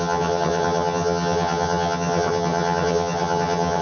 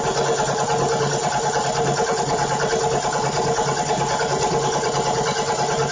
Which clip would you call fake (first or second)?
first